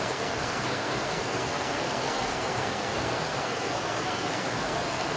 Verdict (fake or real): fake